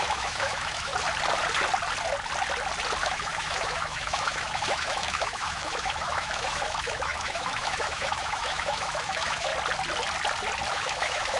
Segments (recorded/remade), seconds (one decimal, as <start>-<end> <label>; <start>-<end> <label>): 0.0-0.9 remade; 0.9-3.0 recorded; 3.0-9.5 remade; 9.5-10.7 recorded; 10.7-11.4 remade